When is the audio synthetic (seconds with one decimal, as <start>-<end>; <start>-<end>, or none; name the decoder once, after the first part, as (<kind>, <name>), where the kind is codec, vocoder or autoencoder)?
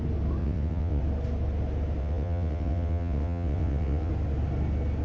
0.4-1.0 (vocoder, WaveNeXt); 2.0-4.1